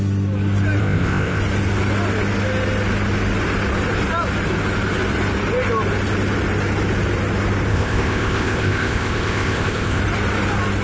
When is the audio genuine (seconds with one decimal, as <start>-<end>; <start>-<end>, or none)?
0.0-0.8; 1.4-7.7; 10.0-10.8